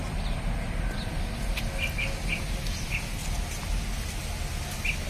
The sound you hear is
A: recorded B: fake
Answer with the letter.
A